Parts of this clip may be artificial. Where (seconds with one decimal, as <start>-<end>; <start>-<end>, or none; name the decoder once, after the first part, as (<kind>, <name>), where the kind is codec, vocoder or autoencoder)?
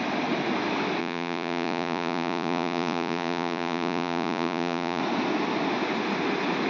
1.0-5.0 (vocoder, Vocos)